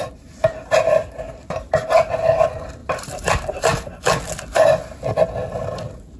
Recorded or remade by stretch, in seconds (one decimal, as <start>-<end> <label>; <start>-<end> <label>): 0.0-1.4 recorded; 1.4-1.9 remade; 1.9-2.8 recorded; 2.8-3.6 remade; 3.6-6.2 recorded